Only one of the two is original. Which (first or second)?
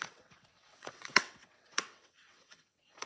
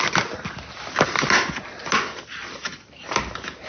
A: second